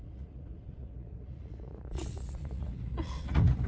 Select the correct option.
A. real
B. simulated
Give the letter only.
B